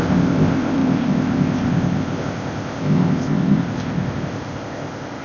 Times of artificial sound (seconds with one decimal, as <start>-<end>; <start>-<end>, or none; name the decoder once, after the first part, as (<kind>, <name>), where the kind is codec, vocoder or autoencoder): 0.0-5.2 (codec, ZipCodec)

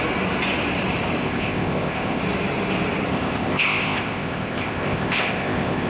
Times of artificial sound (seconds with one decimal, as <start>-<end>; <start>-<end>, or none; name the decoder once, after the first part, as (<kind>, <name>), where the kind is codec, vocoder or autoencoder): 1.2-2.2 (codec, ZipCodec); 3.1-5.9

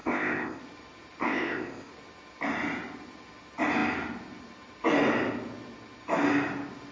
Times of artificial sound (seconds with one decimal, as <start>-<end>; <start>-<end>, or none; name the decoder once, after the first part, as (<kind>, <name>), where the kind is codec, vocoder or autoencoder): 0.0-0.6 (codec, ZipCodec); 1.2-1.9

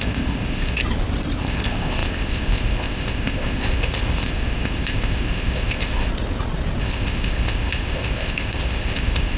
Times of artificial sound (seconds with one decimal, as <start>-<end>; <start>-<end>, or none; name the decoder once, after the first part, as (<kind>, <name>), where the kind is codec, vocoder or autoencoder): 0.0-0.8 (codec, ZipCodec); 1.4-6.1; 6.8-9.4